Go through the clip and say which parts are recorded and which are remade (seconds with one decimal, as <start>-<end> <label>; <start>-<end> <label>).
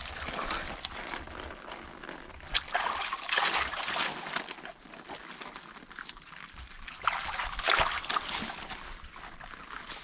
0.0-1.0 remade; 1.0-10.0 recorded